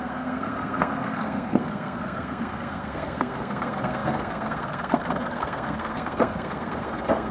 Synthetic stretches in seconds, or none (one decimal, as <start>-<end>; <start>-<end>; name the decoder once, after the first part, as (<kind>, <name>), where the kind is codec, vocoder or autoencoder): 0.0-7.3 (codec, SNAC)